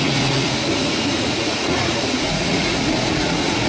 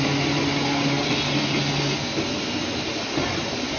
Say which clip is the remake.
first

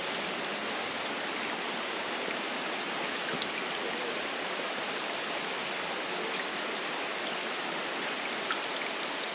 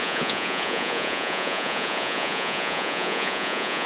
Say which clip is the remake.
second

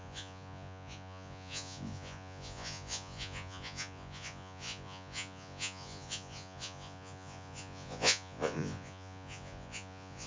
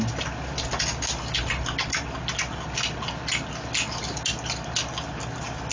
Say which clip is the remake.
first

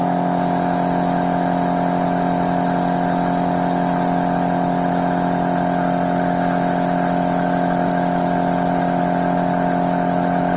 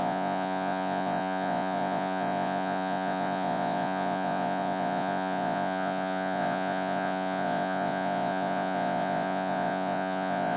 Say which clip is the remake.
second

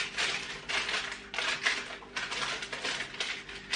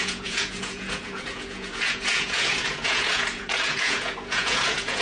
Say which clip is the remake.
second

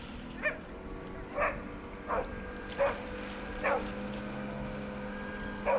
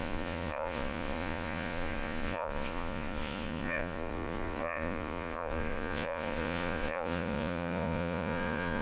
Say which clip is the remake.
second